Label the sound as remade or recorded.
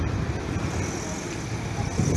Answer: recorded